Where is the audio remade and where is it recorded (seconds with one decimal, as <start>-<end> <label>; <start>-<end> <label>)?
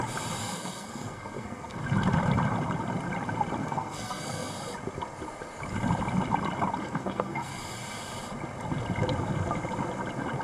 0.0-0.4 recorded; 0.4-1.8 remade; 1.8-3.6 recorded; 3.6-4.5 remade; 4.5-6.8 recorded; 6.8-7.6 remade; 7.6-10.4 recorded